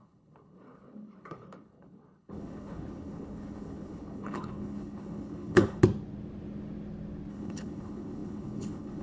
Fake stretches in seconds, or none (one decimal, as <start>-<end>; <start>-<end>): 0.0-5.8; 7.3-9.0